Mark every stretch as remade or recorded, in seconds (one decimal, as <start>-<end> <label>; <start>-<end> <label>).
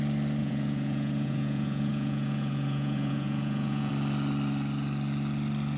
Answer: 0.0-0.4 recorded; 0.4-3.9 remade; 3.9-5.8 recorded